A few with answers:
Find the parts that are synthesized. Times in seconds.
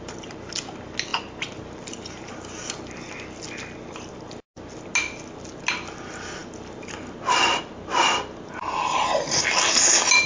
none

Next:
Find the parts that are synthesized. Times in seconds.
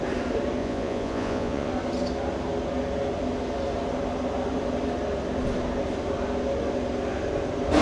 0.6-1.7 (vocoder, Vocos)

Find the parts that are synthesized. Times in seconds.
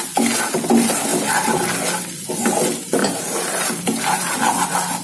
3.0-4.4 (vocoder, BigVGAN v2)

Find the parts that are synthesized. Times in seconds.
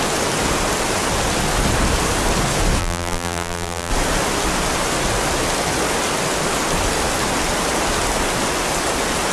2.8-3.9 (vocoder, BigVGAN v2)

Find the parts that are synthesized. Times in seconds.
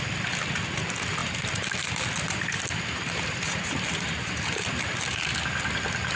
none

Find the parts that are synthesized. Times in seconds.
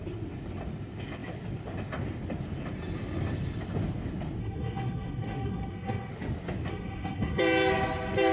4.4-6.1 (codec, SNAC); 6.7-7.4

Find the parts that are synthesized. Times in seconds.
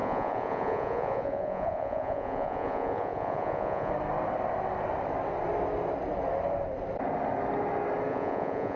0.0-3.9 (vocoder, Vocos); 8.1-8.8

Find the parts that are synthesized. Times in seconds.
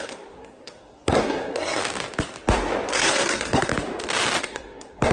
0.0-1.8 (codec, SNAC); 2.9-3.7; 4.4-5.1